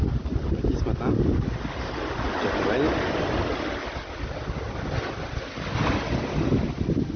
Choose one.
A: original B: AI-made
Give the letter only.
A